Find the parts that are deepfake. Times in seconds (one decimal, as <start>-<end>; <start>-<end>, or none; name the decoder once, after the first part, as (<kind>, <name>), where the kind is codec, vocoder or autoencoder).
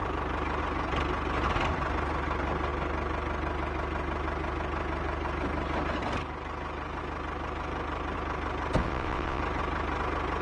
8.8-9.4 (vocoder, WaveNeXt)